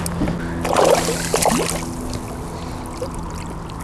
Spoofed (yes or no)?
no